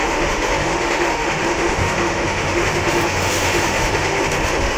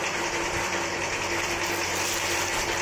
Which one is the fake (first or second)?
first